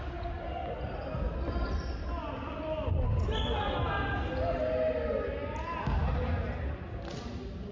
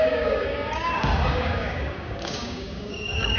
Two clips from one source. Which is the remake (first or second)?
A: second